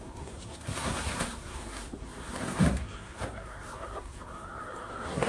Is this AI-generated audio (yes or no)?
yes